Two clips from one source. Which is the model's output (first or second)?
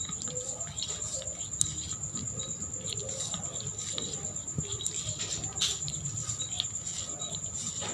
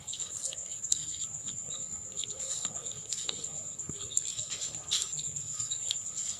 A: second